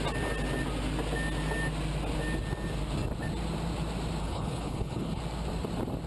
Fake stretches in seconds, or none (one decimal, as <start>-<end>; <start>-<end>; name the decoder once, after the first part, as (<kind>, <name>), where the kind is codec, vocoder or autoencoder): 4.2-5.2 (codec, HILCodec)